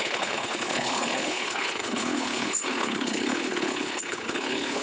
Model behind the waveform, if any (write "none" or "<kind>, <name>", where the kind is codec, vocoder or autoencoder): codec, HILCodec